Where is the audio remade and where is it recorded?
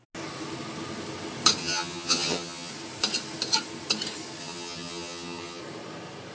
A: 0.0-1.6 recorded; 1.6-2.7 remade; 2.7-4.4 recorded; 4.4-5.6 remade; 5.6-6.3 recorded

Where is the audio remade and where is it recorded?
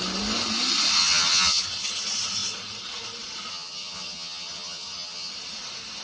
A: 0.0-1.0 recorded; 1.0-1.6 remade; 1.6-3.5 recorded; 3.5-5.3 remade; 5.3-6.0 recorded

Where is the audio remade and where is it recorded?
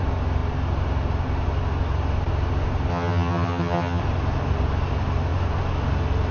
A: 0.0-2.9 recorded; 2.9-4.0 remade; 4.0-6.3 recorded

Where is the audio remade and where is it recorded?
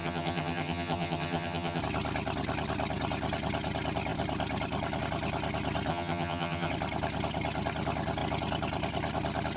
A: 0.0-1.8 remade; 1.8-5.9 recorded; 5.9-6.7 remade; 6.7-9.6 recorded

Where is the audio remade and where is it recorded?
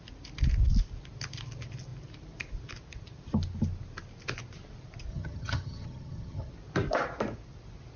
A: 0.0-5.1 recorded; 5.1-6.5 remade; 6.5-8.0 recorded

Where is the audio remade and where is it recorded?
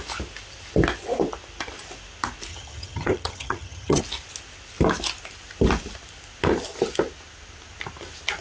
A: 0.0-2.5 recorded; 2.5-4.0 remade; 4.0-8.4 recorded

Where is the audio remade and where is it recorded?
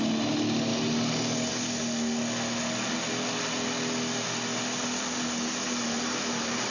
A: 0.0-6.7 recorded